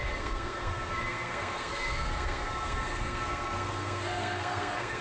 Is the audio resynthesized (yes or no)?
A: yes